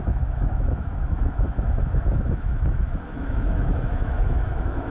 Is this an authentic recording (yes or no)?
no